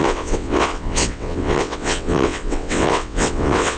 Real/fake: fake